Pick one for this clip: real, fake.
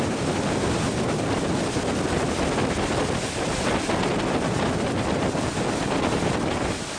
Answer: real